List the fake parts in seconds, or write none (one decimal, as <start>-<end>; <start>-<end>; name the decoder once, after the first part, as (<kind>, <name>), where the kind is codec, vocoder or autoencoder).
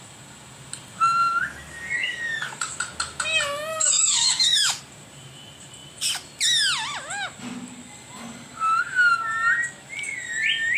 1.4-2.7 (codec, DAC); 3.7-4.8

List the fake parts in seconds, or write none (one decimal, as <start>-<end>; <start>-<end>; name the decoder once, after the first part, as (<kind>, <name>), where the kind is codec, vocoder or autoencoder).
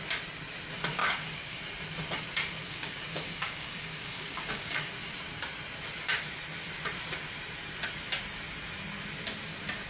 1.0-1.6 (codec, DAC); 2.6-4.9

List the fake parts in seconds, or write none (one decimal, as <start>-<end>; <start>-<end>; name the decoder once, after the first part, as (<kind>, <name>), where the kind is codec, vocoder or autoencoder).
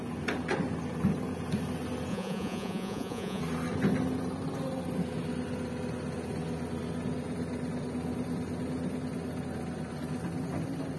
2.1-3.4 (vocoder, Vocos)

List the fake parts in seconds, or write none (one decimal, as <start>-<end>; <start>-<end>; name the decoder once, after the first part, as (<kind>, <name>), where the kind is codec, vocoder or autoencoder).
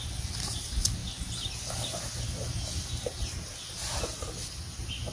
none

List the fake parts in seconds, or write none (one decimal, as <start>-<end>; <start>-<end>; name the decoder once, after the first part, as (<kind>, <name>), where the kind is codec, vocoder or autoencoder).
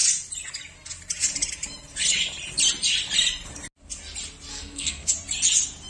4.5-5.1 (codec, SNAC)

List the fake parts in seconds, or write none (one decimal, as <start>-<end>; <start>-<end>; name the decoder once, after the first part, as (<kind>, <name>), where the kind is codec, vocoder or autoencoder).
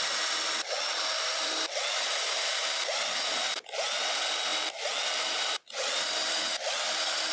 2.6-3.6 (vocoder, BigVGAN v2); 4.5-7.3